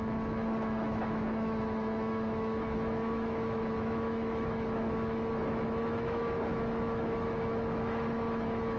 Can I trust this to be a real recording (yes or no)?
no